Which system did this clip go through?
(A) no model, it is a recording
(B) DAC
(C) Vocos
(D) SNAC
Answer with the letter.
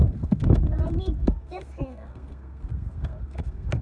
D